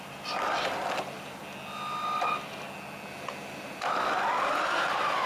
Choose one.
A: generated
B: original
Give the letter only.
B